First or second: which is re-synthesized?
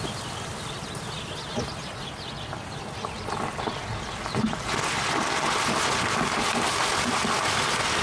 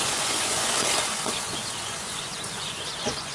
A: second